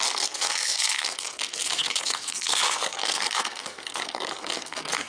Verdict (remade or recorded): remade